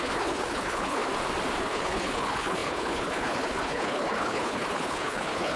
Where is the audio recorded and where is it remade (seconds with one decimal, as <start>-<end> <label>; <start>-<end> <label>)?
0.0-1.0 remade; 1.0-1.6 recorded; 1.6-5.6 remade